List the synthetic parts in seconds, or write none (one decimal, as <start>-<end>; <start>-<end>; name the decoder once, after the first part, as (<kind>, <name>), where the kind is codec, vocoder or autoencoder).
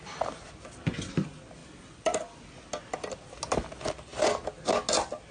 1.6-2.6 (vocoder, BigVGAN v2)